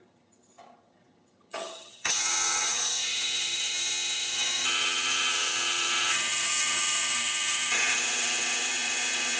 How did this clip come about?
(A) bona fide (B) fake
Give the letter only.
B